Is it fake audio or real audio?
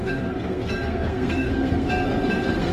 fake